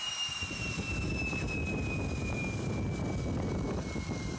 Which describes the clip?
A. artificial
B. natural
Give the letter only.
B